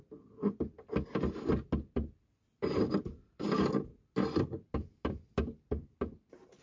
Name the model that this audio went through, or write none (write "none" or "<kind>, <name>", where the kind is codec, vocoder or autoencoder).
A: none